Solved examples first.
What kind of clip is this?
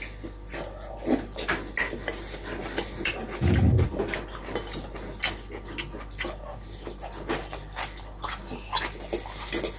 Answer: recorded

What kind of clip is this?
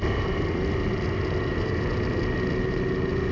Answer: recorded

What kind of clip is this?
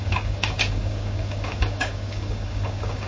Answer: remade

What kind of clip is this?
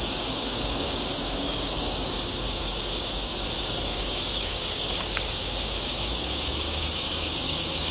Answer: remade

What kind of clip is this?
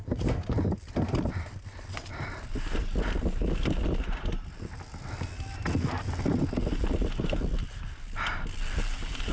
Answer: recorded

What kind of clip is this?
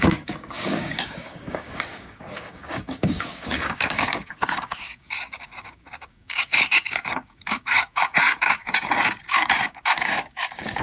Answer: remade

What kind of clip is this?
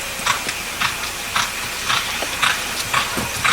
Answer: recorded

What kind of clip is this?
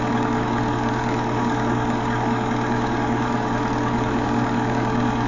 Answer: remade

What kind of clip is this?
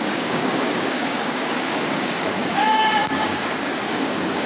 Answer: remade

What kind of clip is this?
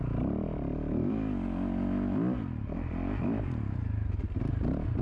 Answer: recorded